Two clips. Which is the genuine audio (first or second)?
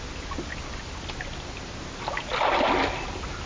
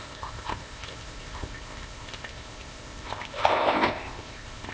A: first